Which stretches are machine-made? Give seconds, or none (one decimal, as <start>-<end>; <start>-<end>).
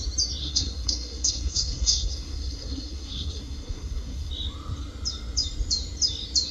0.4-4.3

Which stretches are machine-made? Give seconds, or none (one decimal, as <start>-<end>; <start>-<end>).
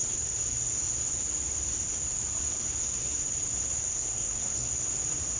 3.9-4.7